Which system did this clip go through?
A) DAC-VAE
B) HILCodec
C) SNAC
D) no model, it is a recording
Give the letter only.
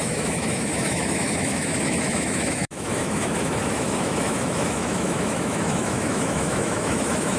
A